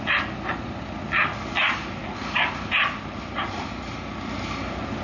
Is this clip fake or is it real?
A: real